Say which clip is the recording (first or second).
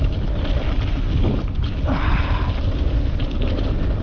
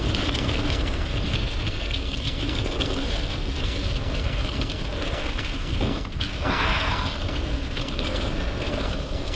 first